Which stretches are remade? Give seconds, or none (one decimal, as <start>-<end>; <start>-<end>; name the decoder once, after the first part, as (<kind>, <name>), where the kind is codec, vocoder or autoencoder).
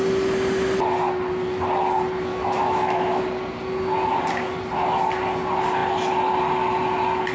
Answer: 2.3-3.2 (autoencoder, DAC-VAE)